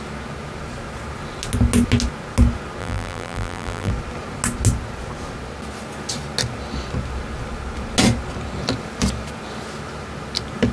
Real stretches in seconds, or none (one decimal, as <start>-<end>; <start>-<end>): 0.0-2.8; 3.9-10.7